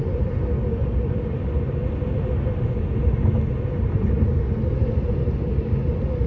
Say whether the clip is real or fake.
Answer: real